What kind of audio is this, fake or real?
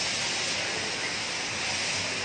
real